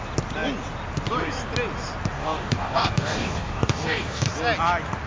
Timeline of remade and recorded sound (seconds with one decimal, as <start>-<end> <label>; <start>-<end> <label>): 0.0-2.2 recorded; 2.2-4.3 remade; 4.3-5.1 recorded